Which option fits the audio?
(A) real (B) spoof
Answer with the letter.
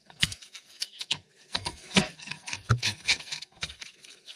B